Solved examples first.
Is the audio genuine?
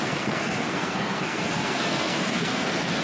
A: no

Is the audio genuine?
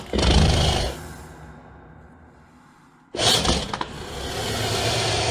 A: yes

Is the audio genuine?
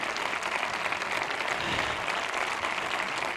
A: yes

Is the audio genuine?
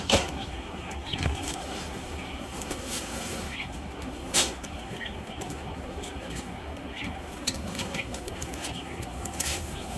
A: no